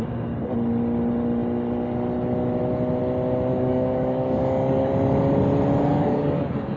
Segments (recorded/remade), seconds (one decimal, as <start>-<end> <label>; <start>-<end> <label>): 0.0-3.5 recorded; 3.5-4.9 remade; 4.9-5.9 recorded; 5.9-6.8 remade